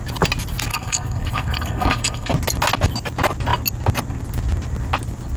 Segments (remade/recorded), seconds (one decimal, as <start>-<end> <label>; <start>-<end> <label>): 0.0-0.7 recorded; 0.7-2.3 remade; 2.3-5.4 recorded